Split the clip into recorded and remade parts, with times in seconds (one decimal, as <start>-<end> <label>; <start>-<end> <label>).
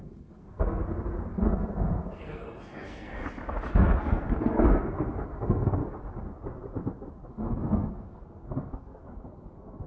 0.0-0.8 remade; 0.8-1.3 recorded; 1.3-3.2 remade; 3.2-3.7 recorded; 3.7-5.8 remade; 5.8-7.3 recorded; 7.3-9.9 remade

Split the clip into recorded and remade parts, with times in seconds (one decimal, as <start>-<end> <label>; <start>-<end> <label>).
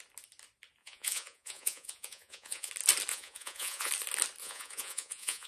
0.0-0.8 recorded; 0.8-2.7 remade; 2.7-3.1 recorded; 3.1-3.9 remade; 3.9-4.4 recorded; 4.4-5.5 remade